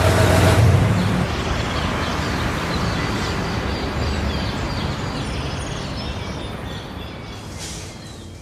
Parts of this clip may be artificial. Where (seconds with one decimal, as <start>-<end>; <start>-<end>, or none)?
none